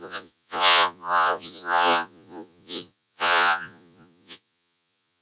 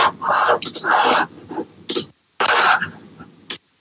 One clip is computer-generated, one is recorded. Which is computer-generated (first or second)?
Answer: first